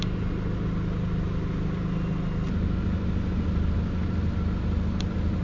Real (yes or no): yes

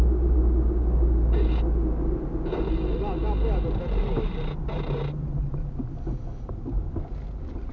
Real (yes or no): yes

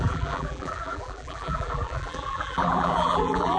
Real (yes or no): no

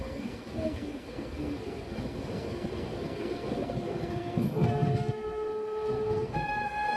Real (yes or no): no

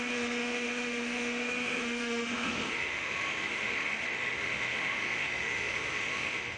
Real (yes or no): no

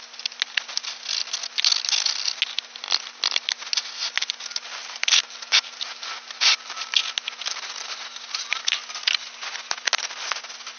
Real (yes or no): yes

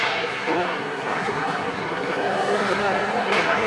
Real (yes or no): no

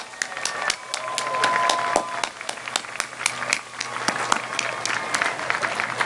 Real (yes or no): yes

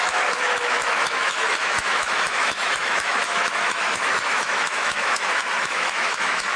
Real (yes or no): no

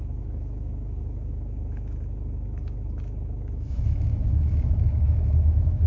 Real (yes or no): no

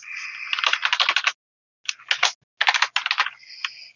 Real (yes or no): yes